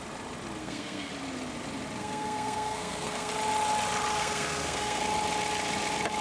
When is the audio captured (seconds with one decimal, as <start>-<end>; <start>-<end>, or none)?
0.0-0.6; 1.1-2.0; 3.3-4.2; 5.0-6.2